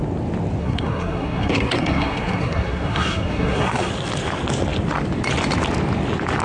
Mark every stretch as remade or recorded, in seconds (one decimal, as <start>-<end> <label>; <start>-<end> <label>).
0.0-0.6 recorded; 0.6-3.9 remade; 3.9-6.4 recorded